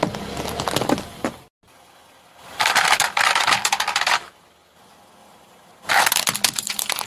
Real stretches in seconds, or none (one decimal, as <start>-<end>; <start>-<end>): 0.0-5.2; 6.0-7.1